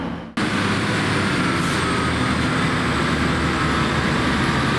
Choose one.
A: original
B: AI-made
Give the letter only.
A